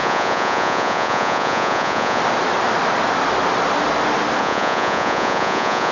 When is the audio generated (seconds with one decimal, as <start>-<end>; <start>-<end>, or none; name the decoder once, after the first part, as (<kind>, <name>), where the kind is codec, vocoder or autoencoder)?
0.0-2.2 (vocoder, Vocos); 4.4-5.9